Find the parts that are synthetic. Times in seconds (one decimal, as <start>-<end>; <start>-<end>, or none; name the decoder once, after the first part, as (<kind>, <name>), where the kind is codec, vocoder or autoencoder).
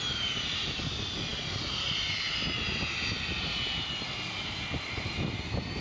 none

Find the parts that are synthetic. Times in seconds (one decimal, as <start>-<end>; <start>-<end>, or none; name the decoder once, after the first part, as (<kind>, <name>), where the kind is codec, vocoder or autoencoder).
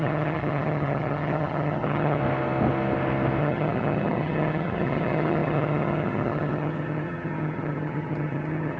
0.0-2.2 (vocoder, HiFi-GAN); 3.4-8.8